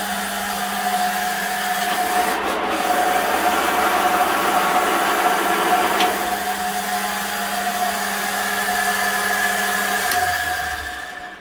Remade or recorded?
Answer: recorded